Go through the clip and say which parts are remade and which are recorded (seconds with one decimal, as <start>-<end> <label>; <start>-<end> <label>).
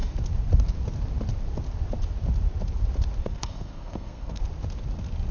0.0-3.2 recorded; 3.2-4.4 remade; 4.4-5.3 recorded